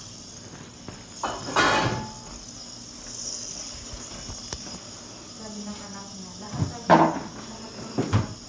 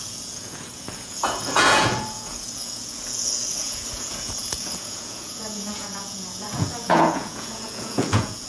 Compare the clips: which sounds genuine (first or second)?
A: first